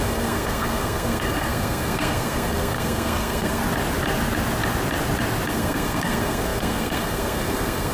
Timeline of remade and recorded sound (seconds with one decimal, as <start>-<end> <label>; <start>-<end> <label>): 0.0-3.6 remade; 3.6-5.5 recorded; 5.5-7.9 remade